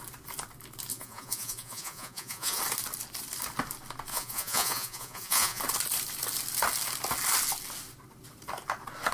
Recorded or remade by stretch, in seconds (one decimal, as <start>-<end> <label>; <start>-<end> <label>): 0.0-0.9 recorded; 0.9-2.6 remade; 2.6-4.1 recorded; 4.1-5.6 remade; 5.6-9.1 recorded